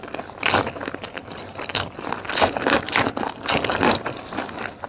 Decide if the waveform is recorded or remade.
recorded